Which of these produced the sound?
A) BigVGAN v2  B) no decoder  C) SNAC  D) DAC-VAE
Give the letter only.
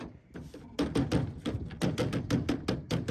B